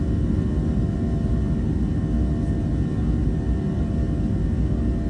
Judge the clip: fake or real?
real